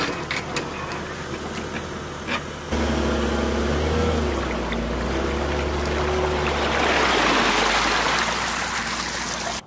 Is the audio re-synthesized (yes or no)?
no